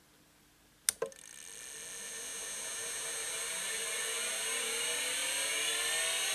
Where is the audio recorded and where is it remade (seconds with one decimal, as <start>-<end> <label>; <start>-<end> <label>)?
0.0-6.3 recorded